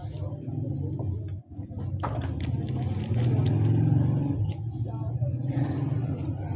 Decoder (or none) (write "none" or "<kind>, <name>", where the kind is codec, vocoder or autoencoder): none